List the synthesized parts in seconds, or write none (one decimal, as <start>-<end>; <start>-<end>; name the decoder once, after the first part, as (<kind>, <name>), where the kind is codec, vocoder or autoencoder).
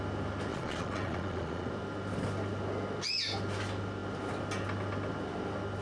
0.5-1.7 (vocoder, Vocos)